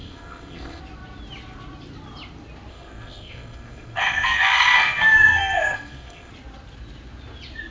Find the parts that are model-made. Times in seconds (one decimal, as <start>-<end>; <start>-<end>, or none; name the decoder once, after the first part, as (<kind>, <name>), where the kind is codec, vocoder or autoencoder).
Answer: 0.0-0.8 (codec, SNAC); 2.7-6.3